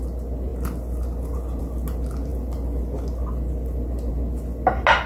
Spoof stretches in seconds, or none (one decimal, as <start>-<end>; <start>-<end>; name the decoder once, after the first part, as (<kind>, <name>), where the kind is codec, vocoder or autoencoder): none